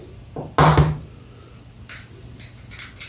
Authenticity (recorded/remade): recorded